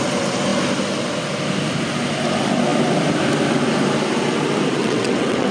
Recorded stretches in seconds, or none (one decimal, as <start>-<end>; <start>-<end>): 0.0-4.8